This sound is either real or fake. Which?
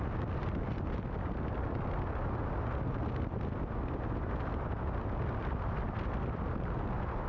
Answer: real